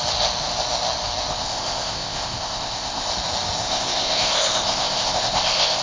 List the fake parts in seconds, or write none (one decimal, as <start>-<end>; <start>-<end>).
1.3-3.1; 3.6-5.8